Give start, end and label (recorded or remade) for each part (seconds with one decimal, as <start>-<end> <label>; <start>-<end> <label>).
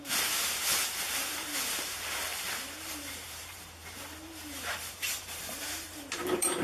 0.0-6.6 remade